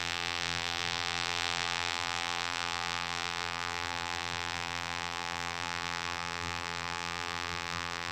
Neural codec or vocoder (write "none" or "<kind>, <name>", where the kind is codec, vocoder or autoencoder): vocoder, BigVGAN v2